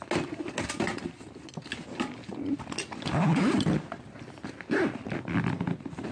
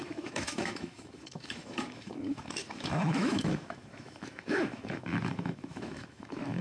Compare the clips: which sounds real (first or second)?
first